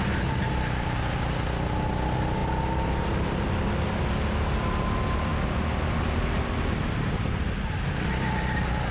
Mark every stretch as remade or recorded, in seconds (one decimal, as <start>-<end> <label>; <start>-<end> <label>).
0.0-8.9 recorded